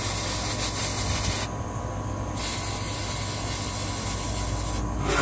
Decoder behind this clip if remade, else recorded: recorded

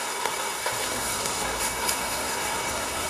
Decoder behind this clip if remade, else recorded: remade, codec, SNAC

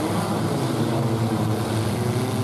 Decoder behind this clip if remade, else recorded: recorded